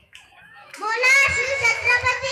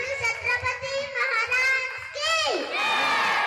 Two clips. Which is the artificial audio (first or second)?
first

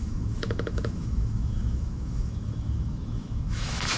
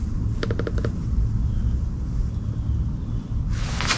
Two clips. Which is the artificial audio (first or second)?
first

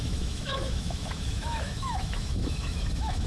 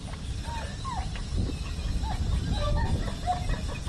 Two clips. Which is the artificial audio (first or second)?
first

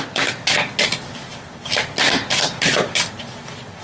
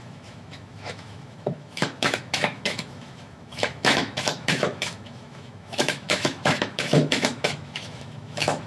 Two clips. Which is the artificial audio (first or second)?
second